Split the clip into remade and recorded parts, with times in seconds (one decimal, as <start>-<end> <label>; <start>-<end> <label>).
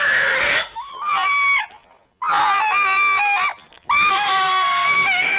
0.0-0.9 remade; 0.9-4.1 recorded; 4.1-5.4 remade